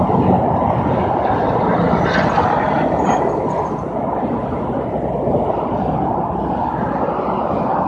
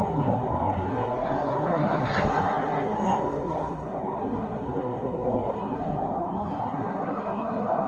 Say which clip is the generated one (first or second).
second